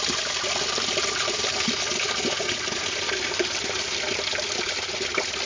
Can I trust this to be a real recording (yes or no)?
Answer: yes